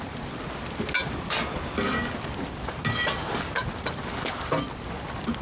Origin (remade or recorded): recorded